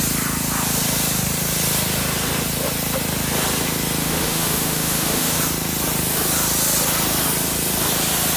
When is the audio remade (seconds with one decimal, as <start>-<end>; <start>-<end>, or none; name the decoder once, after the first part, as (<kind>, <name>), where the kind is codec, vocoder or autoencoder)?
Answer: 4.0-5.4 (autoencoder, DAC-VAE)